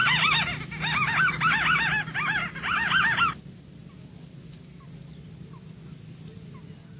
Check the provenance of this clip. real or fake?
real